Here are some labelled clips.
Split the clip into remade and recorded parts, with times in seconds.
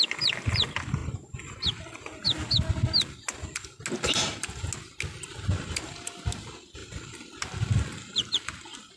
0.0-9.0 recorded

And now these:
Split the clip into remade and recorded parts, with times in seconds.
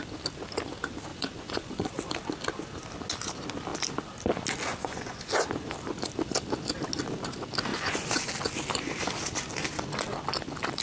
0.0-1.1 recorded; 1.1-1.9 remade; 1.9-4.7 recorded; 4.7-5.3 remade; 5.3-7.7 recorded; 7.7-8.3 remade; 8.3-10.8 recorded